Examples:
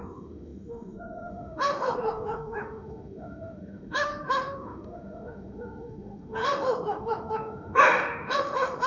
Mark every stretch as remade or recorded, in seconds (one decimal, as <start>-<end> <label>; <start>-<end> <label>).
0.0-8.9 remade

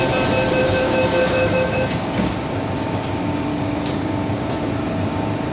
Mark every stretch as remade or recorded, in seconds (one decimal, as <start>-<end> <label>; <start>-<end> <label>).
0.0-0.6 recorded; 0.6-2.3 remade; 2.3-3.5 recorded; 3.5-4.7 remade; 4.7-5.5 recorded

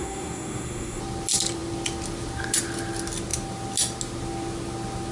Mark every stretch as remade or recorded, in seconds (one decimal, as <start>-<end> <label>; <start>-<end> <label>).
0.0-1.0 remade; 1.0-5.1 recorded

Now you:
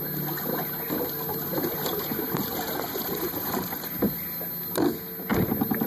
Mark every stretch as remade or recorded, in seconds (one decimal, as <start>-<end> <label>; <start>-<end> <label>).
0.0-2.5 recorded; 2.5-3.9 remade; 3.9-5.9 recorded

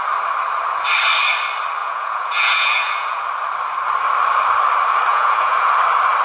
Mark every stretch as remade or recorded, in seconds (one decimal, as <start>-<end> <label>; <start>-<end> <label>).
0.0-1.8 recorded; 1.8-3.2 remade; 3.2-5.1 recorded; 5.1-5.7 remade; 5.7-6.2 recorded

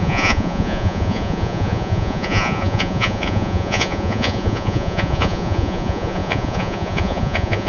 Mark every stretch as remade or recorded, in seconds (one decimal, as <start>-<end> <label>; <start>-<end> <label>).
0.0-7.7 remade

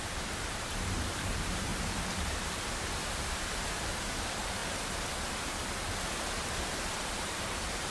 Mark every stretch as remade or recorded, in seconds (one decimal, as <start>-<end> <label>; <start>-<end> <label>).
0.0-1.7 remade; 1.7-2.3 recorded; 2.3-4.6 remade; 4.6-6.8 recorded; 6.8-7.9 remade

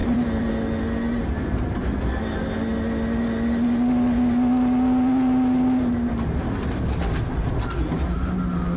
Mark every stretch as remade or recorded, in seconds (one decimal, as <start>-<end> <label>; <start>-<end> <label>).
0.0-0.5 remade; 0.5-8.8 recorded